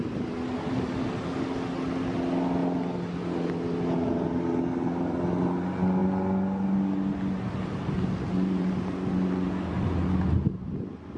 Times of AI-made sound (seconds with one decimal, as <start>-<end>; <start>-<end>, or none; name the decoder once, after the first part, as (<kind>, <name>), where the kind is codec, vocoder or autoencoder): none